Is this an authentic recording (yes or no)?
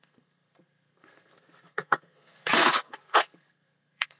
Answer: no